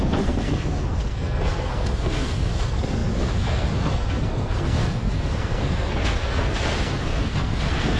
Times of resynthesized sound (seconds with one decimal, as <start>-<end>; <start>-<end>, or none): 0.0-8.0